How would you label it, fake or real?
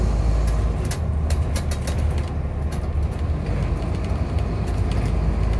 real